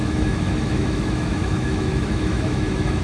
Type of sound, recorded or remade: remade